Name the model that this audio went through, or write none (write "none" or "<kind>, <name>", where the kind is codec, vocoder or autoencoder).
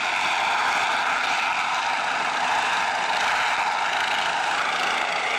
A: none